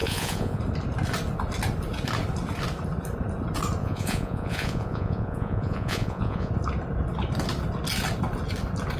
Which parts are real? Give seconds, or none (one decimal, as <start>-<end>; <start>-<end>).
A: 0.6-3.8; 6.5-9.0